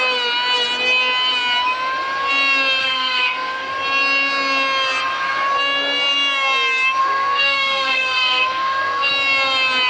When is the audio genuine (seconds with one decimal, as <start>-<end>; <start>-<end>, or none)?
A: 0.0-2.8; 3.7-7.0; 9.1-9.9